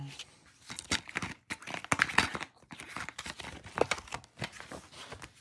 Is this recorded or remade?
recorded